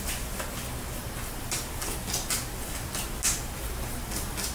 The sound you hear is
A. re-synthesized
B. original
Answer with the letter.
B